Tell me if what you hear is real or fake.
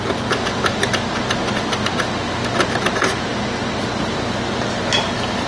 real